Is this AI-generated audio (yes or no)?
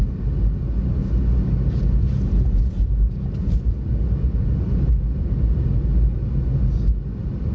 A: no